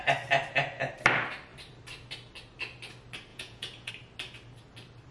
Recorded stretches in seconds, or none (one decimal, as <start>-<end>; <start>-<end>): 0.0-3.3; 3.9-5.1